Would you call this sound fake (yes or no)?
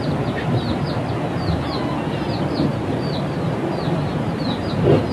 no